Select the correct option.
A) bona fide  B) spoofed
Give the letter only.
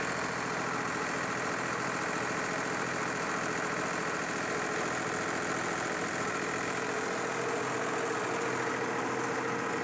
A